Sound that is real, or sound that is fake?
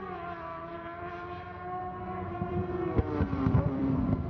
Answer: fake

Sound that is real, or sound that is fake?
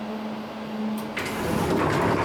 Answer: real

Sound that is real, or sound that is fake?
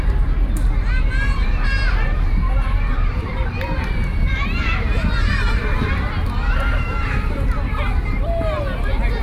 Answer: fake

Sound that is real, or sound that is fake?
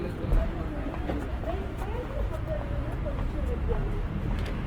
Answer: fake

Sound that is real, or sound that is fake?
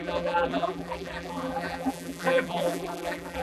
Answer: fake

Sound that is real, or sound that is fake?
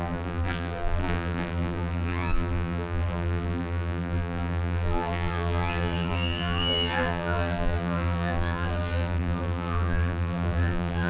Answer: fake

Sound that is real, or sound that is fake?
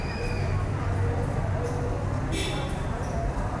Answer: fake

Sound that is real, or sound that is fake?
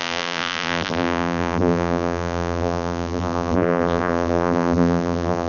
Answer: fake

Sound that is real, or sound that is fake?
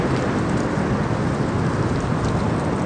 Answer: real